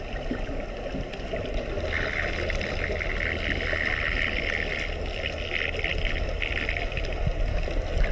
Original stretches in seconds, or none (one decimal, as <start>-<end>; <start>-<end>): 0.0-8.1